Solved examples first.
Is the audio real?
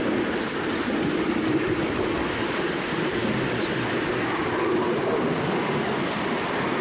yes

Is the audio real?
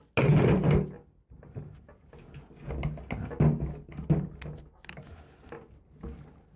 yes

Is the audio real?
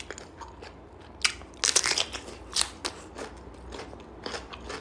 yes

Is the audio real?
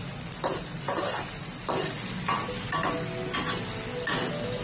yes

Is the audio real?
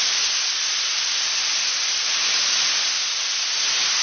yes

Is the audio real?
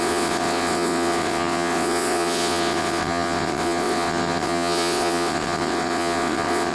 no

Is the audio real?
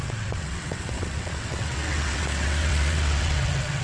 no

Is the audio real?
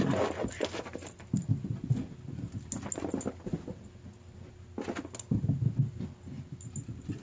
yes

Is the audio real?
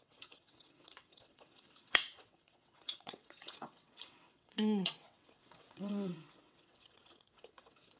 no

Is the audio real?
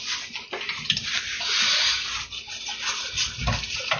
yes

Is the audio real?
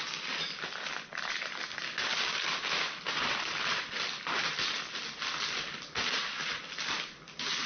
yes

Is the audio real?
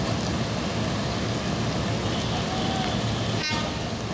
yes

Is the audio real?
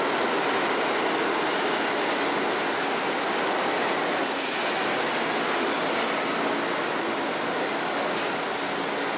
yes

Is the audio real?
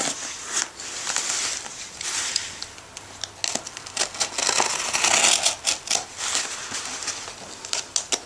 yes